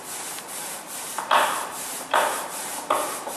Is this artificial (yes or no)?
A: yes